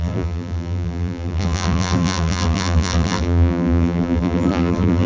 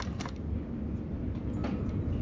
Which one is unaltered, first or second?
second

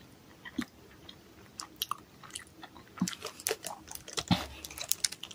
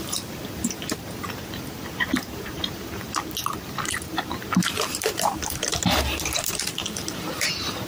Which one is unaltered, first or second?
first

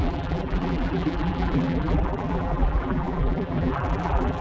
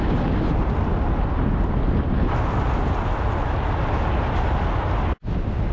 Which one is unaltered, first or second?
second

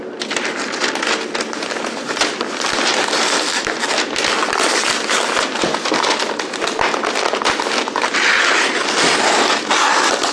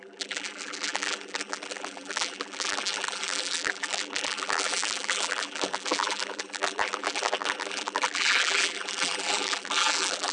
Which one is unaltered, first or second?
first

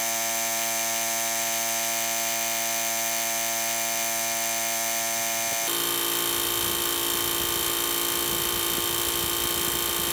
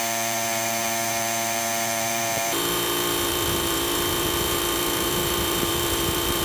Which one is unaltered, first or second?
first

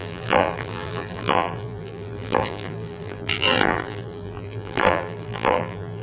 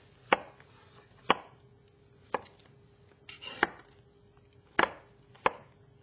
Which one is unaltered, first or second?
second